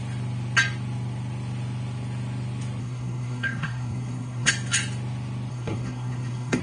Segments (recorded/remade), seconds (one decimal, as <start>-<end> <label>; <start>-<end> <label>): 0.0-2.8 recorded; 2.8-4.5 remade; 4.5-5.5 recorded; 5.5-6.6 remade